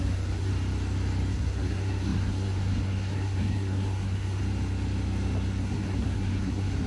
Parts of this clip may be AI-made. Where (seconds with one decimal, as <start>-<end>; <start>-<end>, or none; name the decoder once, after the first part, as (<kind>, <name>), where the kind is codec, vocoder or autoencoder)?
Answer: 0.0-0.5 (codec, SNAC); 1.3-4.4; 5.6-6.9